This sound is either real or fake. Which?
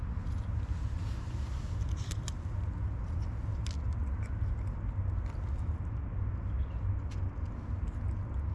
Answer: real